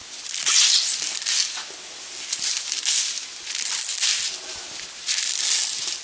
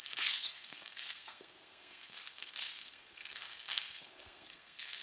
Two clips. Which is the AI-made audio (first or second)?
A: second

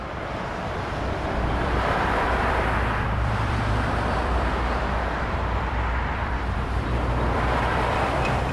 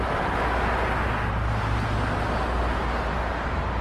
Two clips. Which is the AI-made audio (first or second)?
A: first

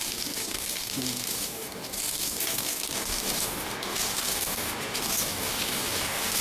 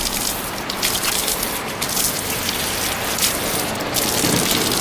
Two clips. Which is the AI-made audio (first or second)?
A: first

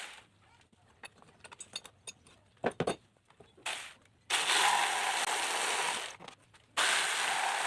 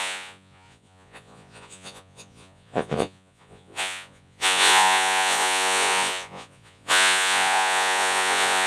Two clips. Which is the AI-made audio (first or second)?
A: second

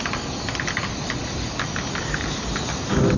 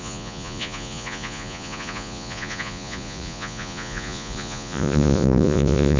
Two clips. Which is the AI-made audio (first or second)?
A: second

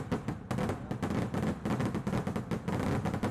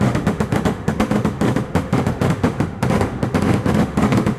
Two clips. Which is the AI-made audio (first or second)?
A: second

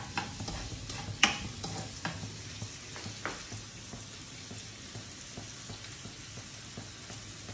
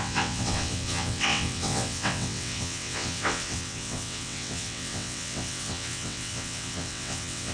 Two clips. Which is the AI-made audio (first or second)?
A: second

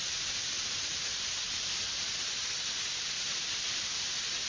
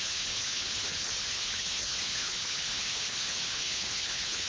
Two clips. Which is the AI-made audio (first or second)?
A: second